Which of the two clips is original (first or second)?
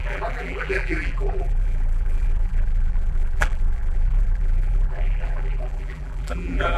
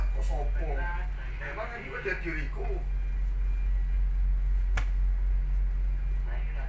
second